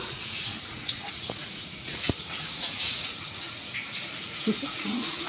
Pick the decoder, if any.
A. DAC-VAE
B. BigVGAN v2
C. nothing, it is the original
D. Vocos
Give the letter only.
D